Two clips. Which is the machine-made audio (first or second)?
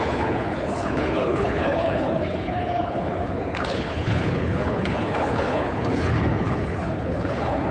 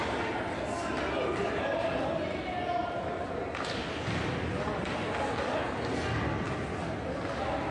first